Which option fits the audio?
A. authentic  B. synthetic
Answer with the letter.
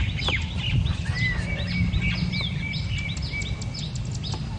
A